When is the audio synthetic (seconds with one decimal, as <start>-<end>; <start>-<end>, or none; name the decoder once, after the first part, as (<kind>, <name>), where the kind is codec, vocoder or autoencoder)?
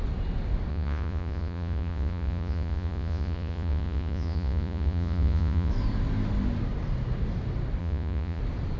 0.7-5.7 (vocoder, Vocos); 7.8-8.4